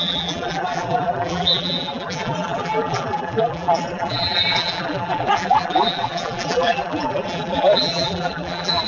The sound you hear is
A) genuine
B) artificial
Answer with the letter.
B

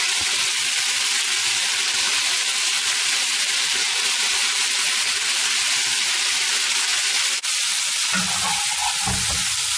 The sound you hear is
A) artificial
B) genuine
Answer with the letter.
B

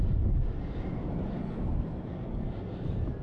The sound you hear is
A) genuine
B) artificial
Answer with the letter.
A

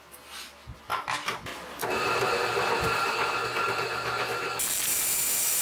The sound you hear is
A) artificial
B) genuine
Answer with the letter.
B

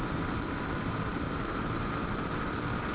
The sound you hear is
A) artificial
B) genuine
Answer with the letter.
A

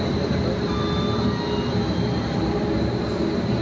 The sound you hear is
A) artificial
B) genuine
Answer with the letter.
B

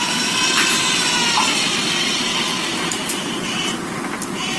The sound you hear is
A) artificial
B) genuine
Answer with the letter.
A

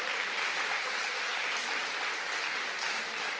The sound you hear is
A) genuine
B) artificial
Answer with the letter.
A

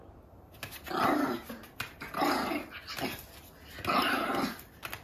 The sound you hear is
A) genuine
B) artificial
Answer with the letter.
A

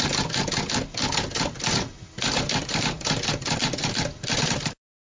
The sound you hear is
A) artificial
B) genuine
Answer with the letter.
B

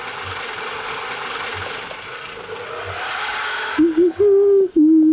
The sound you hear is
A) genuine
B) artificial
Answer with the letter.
A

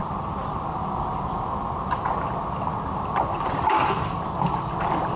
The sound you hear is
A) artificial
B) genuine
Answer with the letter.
B